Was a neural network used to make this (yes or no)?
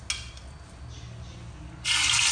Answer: no